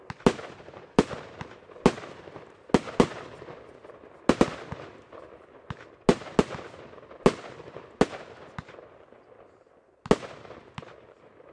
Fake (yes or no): no